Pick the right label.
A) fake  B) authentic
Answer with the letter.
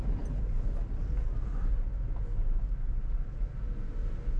B